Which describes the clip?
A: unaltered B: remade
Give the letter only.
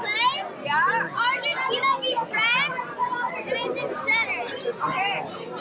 A